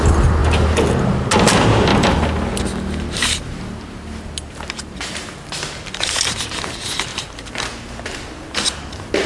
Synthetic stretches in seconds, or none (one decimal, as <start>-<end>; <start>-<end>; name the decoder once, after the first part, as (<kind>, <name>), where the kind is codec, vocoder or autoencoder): none